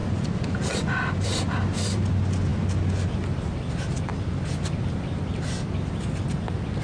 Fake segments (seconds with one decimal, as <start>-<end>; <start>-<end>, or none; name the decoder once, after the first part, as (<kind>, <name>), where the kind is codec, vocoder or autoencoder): 0.0-2.1 (vocoder, BigVGAN v2)